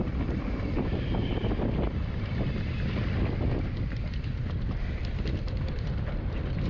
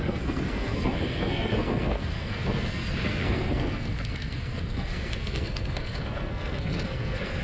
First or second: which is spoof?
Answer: second